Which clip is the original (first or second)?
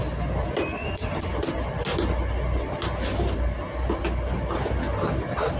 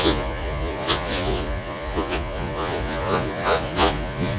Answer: first